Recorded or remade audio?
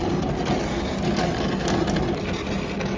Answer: recorded